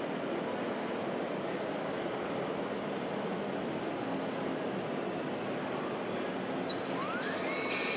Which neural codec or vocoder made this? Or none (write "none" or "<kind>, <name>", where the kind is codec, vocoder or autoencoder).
none